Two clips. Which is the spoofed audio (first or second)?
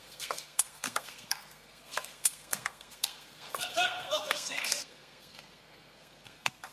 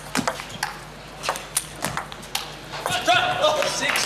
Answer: first